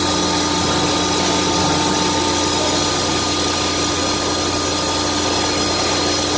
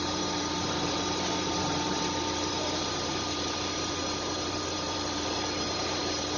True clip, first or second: first